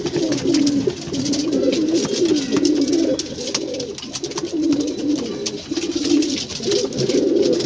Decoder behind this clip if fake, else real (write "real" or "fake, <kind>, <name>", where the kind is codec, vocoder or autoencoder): real